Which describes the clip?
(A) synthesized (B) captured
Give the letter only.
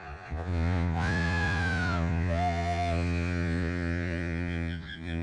A